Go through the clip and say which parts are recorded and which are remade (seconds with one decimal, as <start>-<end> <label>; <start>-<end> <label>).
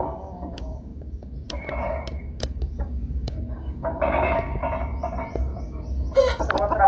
0.0-4.6 remade; 4.6-6.9 recorded